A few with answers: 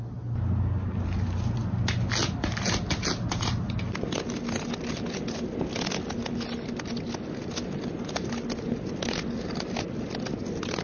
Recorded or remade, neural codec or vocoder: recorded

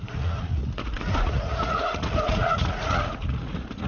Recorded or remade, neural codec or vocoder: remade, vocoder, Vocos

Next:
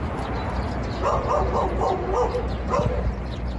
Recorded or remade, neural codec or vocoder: recorded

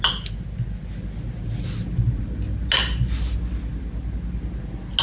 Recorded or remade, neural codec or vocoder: recorded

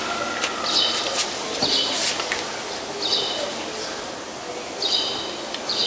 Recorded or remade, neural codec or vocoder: recorded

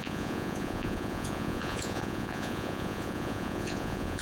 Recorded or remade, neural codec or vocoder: remade, vocoder, Vocos